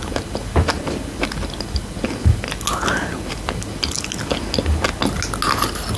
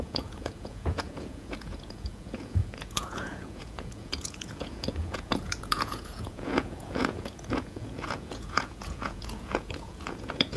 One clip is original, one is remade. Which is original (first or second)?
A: first